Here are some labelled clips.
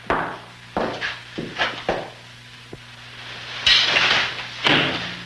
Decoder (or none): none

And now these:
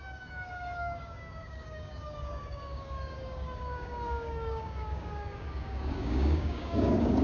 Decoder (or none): codec, DAC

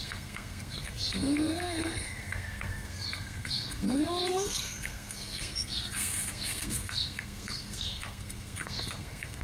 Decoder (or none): codec, SNAC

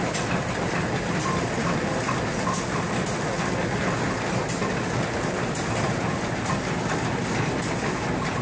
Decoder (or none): none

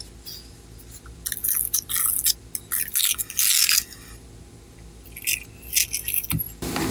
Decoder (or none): none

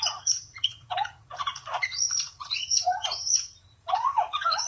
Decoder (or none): vocoder, Vocos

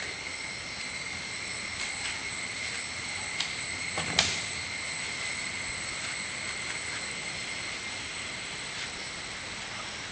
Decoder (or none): none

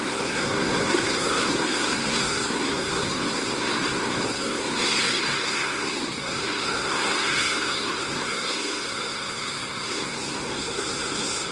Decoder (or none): codec, SNAC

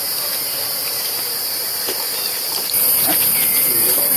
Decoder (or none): none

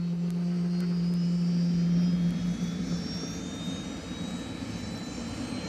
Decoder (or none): none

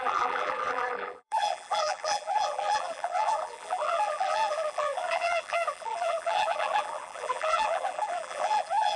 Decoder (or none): vocoder, BigVGAN v2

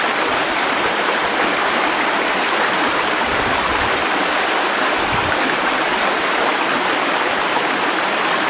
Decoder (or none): none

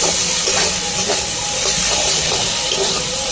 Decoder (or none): none